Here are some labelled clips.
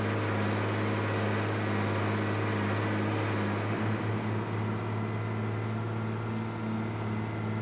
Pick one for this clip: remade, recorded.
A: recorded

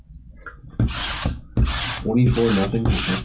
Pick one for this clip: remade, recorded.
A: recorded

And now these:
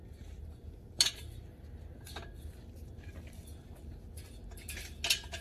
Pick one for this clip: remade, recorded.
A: recorded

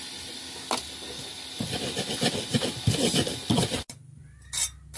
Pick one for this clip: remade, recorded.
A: recorded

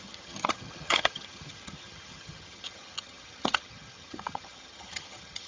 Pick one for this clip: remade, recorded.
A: remade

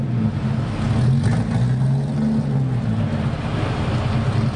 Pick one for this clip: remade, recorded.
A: recorded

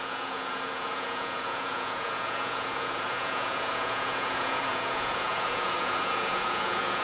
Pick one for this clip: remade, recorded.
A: remade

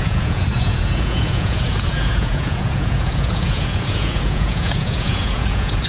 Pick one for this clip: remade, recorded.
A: remade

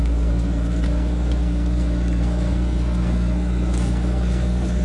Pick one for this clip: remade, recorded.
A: remade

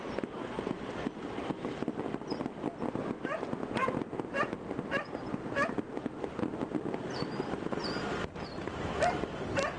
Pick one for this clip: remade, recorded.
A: recorded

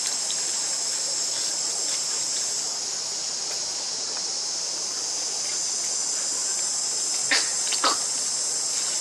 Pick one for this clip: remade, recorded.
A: recorded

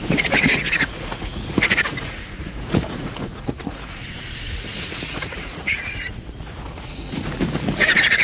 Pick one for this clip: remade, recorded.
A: remade